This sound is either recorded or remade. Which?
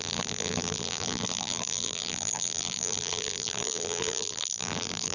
remade